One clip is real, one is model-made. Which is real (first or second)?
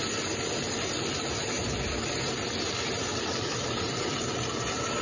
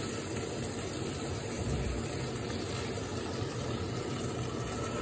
second